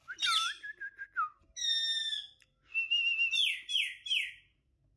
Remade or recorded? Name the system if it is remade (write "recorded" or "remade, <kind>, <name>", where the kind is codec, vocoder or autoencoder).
recorded